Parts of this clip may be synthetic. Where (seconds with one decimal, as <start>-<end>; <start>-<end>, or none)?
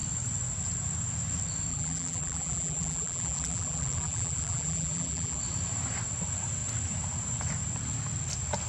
1.7-5.4